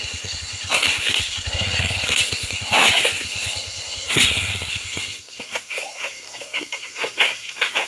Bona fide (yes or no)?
no